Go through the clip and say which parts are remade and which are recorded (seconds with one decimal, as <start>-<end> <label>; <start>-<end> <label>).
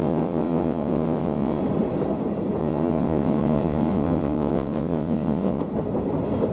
0.0-1.6 remade; 1.6-2.6 recorded; 2.6-5.6 remade; 5.6-6.5 recorded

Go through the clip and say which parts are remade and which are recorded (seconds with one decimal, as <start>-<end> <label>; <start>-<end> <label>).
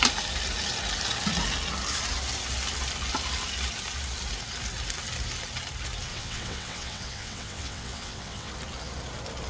0.0-6.1 recorded; 6.1-8.5 remade; 8.5-9.5 recorded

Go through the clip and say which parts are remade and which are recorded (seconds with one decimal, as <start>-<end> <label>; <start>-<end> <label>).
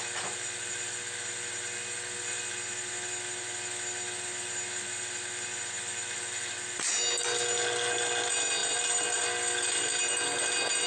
0.0-10.9 recorded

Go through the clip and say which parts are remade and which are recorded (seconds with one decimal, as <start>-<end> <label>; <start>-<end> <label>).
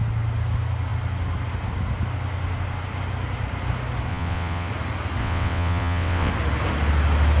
0.0-4.1 recorded; 4.1-4.7 remade; 4.7-5.2 recorded; 5.2-6.3 remade; 6.3-7.4 recorded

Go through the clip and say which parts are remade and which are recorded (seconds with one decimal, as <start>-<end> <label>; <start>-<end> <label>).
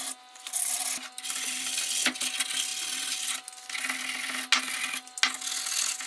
0.0-6.1 recorded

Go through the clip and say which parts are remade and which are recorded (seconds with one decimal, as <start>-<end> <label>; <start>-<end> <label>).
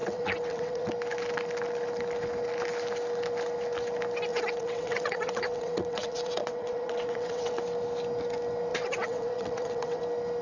0.0-0.9 remade; 0.9-4.3 recorded; 4.3-7.6 remade; 7.6-8.7 recorded; 8.7-10.0 remade; 10.0-10.4 recorded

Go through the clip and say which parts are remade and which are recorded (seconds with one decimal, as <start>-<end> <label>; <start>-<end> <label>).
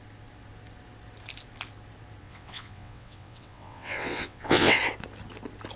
0.0-2.2 recorded; 2.2-4.8 remade; 4.8-5.8 recorded